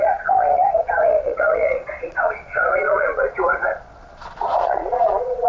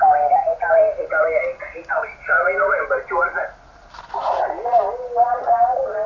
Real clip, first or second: second